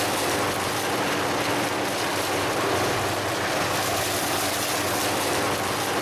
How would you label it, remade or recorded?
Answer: recorded